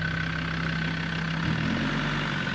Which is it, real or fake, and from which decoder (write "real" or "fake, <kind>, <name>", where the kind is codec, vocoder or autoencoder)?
real